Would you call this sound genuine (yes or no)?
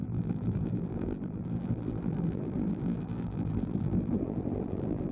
no